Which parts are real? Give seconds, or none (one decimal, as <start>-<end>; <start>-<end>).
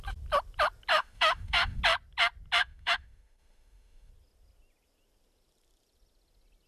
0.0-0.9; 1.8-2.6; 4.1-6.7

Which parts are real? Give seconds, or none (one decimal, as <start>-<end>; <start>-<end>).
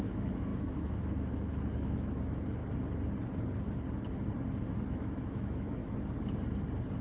2.6-4.9; 5.8-7.0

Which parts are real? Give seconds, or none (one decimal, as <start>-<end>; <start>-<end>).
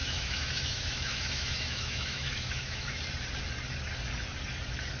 3.0-5.0